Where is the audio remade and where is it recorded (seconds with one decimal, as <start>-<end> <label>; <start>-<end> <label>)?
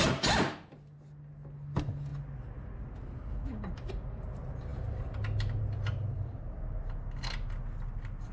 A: 0.0-8.3 recorded